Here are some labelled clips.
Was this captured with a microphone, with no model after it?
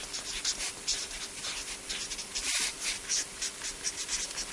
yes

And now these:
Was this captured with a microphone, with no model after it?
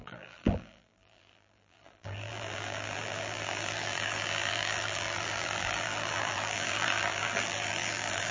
no